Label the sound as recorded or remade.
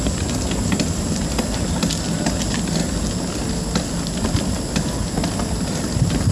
recorded